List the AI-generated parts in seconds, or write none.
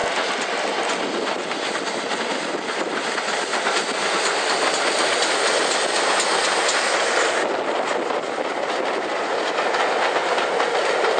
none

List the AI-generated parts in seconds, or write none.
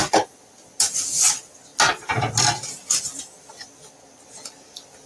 none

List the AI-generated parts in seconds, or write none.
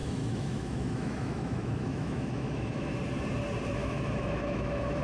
0.0-3.0 (autoencoder, DAC-VAE); 3.8-5.0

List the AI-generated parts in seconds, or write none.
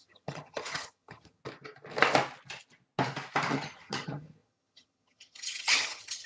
0.0-1.4 (vocoder, HiFi-GAN); 3.5-6.3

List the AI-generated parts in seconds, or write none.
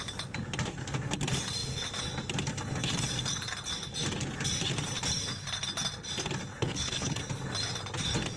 6.5-7.2 (codec, HILCodec)